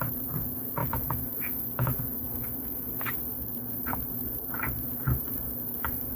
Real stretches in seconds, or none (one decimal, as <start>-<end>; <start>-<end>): none